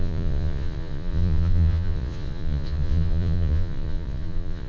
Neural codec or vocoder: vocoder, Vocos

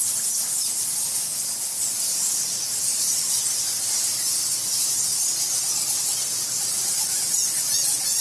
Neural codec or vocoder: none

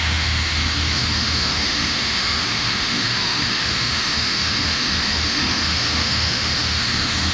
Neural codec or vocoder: autoencoder, DAC-VAE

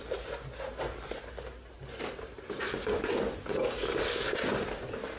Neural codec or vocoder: none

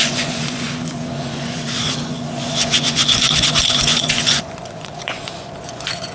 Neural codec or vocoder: vocoder, Vocos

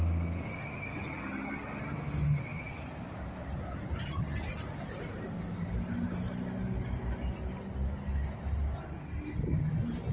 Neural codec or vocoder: none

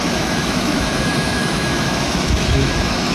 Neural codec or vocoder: autoencoder, DAC-VAE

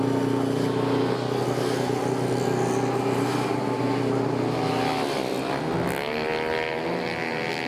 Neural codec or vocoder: none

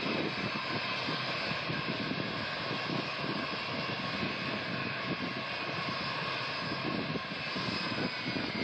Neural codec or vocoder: none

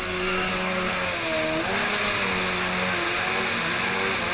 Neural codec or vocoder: none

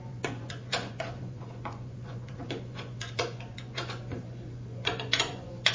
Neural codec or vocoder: vocoder, Vocos